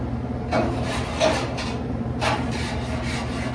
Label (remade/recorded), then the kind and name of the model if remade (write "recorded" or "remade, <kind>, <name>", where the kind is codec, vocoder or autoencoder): recorded